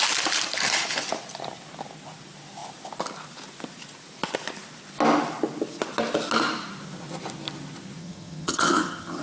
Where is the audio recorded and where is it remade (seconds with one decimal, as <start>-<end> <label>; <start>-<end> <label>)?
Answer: 0.0-8.0 recorded; 8.0-9.2 remade